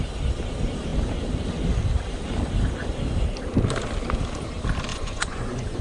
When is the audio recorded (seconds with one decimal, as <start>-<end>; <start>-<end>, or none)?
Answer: 0.0-4.9